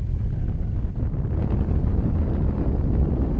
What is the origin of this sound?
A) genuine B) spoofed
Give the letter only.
A